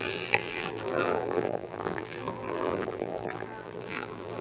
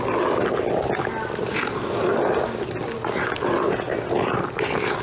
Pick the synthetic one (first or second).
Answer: first